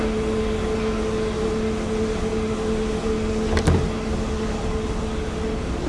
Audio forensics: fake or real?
real